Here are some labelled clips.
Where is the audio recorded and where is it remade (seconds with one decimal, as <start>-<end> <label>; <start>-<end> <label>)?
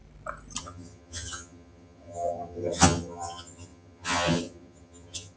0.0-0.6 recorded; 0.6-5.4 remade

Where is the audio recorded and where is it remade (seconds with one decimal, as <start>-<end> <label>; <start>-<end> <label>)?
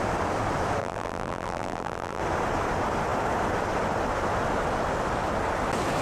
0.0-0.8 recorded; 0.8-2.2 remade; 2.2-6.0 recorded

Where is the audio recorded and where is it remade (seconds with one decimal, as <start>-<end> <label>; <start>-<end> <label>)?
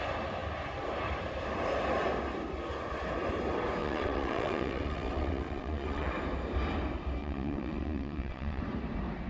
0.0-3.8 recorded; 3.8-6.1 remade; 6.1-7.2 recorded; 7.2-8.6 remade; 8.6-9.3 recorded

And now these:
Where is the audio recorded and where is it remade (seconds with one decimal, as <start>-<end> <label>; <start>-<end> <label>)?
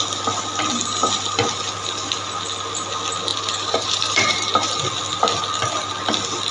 0.0-3.3 recorded; 3.3-4.7 remade; 4.7-6.5 recorded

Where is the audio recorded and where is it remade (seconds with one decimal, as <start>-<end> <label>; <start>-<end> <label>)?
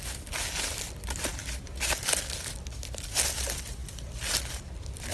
0.0-5.1 recorded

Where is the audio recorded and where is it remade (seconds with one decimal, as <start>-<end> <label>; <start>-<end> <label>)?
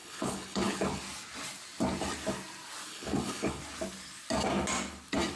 0.0-1.0 remade; 1.0-2.9 recorded; 2.9-3.6 remade; 3.6-5.4 recorded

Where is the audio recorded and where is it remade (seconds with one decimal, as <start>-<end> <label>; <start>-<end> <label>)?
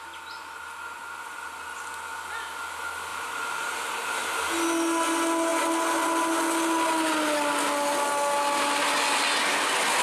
0.0-3.1 recorded; 3.1-3.7 remade; 3.7-10.0 recorded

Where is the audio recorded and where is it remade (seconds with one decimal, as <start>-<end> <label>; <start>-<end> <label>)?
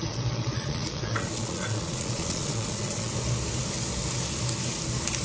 0.0-3.1 remade; 3.1-5.2 recorded